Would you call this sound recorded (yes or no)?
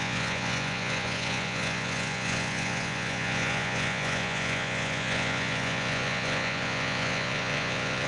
no